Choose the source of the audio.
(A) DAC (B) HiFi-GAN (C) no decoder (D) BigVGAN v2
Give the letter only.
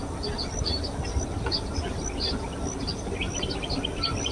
C